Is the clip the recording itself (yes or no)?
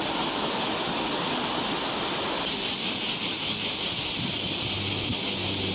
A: yes